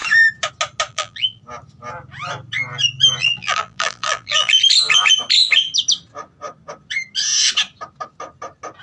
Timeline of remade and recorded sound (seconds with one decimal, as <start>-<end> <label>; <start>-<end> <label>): 0.0-0.9 recorded; 0.9-1.4 remade; 1.4-3.2 recorded; 3.2-4.6 remade; 4.6-8.8 recorded